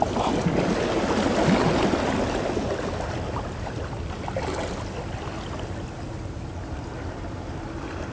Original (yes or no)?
yes